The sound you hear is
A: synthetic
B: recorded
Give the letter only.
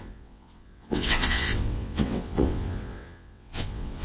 A